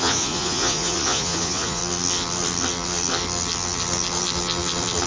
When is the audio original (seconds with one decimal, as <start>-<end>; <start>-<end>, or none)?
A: 1.8-5.1

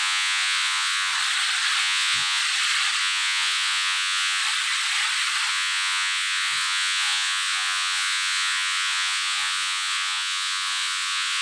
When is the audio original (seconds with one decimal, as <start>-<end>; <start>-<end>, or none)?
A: 1.1-1.8; 2.4-3.0; 4.4-5.5

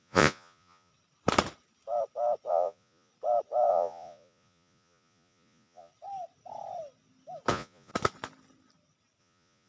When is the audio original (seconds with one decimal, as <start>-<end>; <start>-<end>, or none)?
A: 0.9-2.5; 3.1-3.7; 5.9-7.5; 7.9-9.2

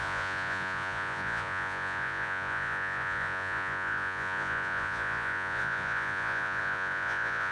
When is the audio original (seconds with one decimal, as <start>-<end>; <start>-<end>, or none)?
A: none

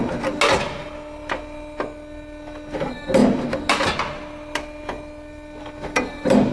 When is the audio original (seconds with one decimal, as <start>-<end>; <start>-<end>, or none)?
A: 0.0-6.5

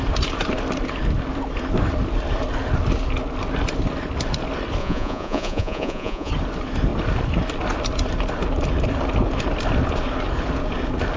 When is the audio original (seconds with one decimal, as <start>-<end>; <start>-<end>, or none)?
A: 0.0-4.8; 6.3-11.2

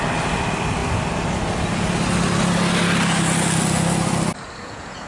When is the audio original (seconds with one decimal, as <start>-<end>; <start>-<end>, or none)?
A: 0.0-4.6

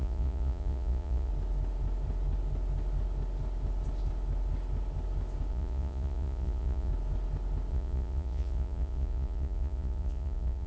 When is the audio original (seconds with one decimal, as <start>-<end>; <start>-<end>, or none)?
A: 1.3-5.5; 6.9-7.7